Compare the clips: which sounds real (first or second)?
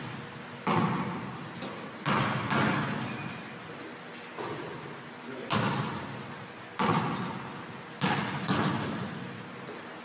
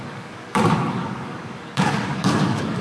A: first